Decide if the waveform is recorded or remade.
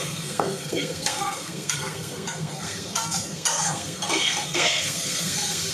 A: remade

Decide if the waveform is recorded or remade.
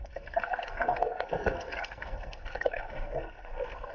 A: remade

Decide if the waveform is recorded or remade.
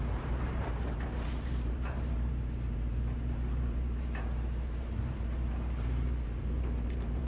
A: remade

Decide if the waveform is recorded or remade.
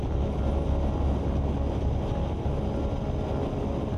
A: recorded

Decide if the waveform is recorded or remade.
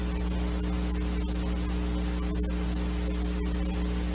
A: recorded